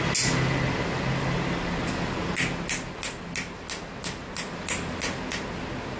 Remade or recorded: recorded